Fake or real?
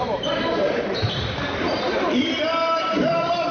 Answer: fake